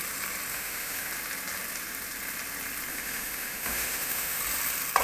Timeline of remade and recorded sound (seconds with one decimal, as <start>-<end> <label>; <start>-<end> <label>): 0.0-0.5 recorded; 0.5-1.1 remade; 1.1-2.9 recorded; 2.9-4.4 remade; 4.4-5.0 recorded